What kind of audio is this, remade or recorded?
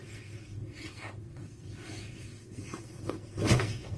remade